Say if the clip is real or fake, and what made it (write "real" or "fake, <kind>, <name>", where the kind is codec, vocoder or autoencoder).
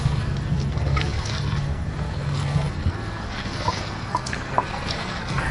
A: fake, codec, SNAC